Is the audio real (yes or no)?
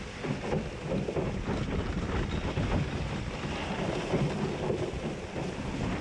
yes